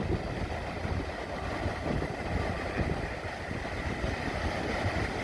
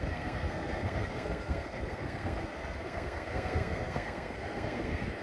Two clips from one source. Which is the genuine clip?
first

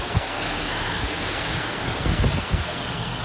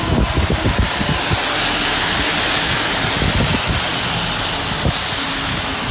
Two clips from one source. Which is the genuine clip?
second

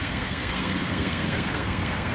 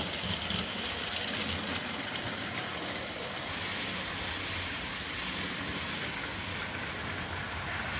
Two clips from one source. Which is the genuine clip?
second